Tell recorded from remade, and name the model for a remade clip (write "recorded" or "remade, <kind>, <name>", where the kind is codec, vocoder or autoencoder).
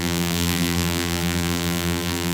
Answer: remade, vocoder, BigVGAN v2